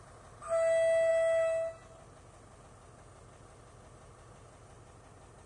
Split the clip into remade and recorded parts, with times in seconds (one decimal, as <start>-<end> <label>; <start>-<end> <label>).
0.0-5.5 recorded